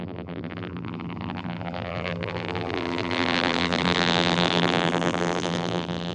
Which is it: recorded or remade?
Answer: remade